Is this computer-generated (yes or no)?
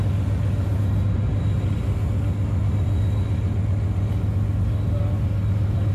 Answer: no